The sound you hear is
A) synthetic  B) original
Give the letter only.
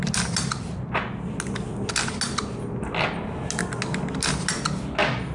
B